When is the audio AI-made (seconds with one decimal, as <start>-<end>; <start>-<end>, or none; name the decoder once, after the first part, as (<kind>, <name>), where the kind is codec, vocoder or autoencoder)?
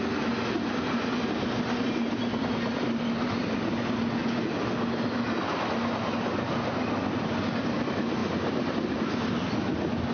8.2-9.3 (vocoder, BigVGAN v2)